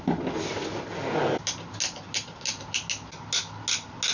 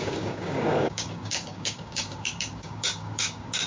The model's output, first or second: second